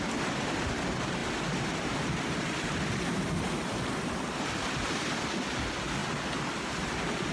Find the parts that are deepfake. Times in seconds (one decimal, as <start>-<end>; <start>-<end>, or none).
none